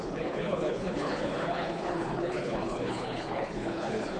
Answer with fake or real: fake